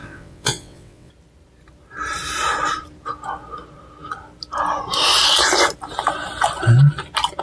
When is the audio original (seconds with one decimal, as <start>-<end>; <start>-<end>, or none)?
1.1-7.4